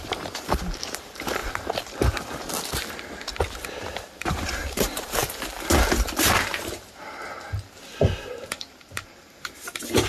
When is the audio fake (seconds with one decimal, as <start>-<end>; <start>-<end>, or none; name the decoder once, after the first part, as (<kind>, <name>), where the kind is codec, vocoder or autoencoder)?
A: 0.0-1.4 (vocoder, BigVGAN v2); 4.2-5.2; 8.0-10.1